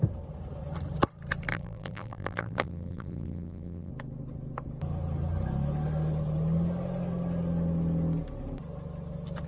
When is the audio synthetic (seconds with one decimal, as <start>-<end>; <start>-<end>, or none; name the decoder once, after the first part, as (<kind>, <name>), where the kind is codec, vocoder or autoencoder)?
1.5-3.9 (vocoder, BigVGAN v2)